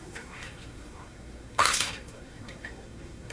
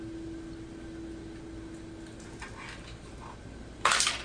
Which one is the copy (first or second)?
first